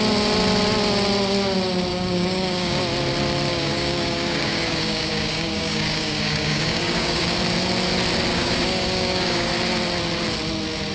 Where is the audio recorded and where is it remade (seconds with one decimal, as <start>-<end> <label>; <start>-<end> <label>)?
0.0-1.9 recorded; 1.9-2.8 remade; 2.8-3.5 recorded; 3.5-7.4 remade; 7.4-8.3 recorded; 8.3-9.5 remade; 9.5-10.9 recorded